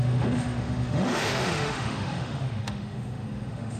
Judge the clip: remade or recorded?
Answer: remade